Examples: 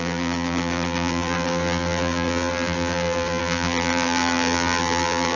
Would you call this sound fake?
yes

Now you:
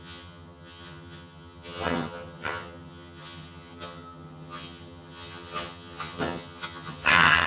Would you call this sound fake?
yes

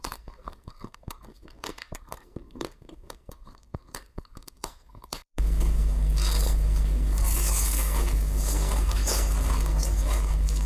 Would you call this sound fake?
yes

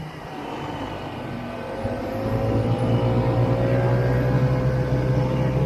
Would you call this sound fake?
no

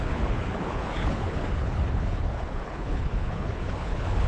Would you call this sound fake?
yes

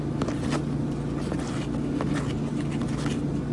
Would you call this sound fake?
no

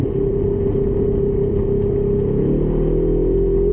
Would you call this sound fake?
no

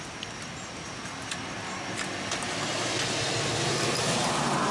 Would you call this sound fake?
no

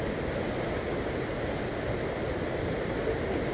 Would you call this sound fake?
no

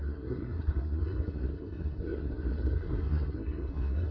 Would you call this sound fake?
yes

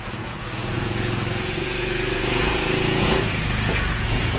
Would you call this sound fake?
yes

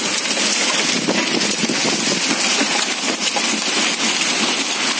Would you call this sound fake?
no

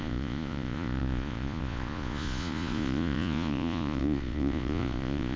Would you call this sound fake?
yes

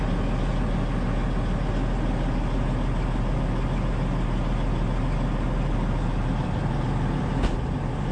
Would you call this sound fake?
no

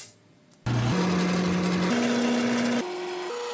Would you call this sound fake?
no